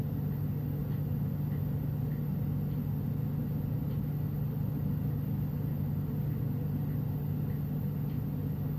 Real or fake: real